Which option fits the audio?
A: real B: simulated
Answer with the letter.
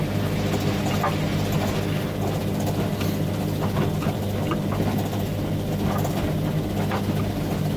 A